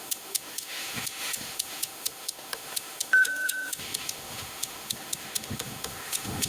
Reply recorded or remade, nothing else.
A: remade